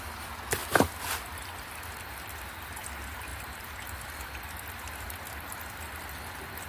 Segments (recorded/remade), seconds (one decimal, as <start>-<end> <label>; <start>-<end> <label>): 0.0-6.7 recorded